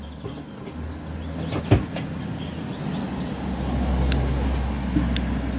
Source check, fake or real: real